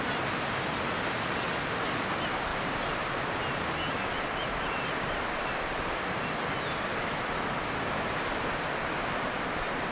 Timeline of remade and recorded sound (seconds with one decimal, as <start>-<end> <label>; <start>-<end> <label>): 0.0-2.5 recorded; 2.5-7.3 remade; 7.3-9.9 recorded